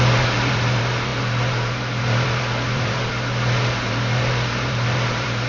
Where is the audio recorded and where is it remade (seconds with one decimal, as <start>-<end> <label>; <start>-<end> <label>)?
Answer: 0.0-5.5 remade